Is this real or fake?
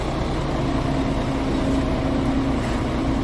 real